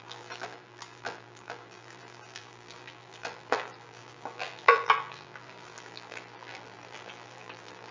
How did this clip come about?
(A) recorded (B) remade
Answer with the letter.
B